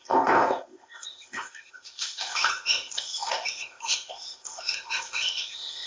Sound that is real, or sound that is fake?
fake